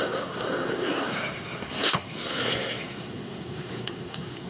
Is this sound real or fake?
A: fake